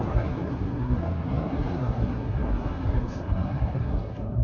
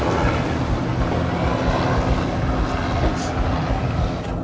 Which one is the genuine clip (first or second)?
second